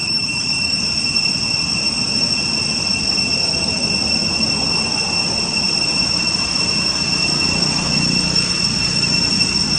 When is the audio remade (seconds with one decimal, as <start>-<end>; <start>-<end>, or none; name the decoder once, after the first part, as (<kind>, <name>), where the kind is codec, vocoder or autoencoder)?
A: 0.0-0.9 (autoencoder, DAC-VAE)